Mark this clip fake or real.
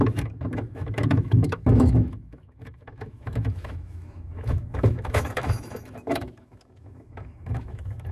fake